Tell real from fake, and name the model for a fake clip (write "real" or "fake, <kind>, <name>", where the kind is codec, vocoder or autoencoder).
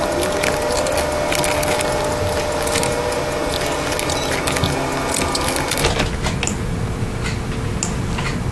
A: real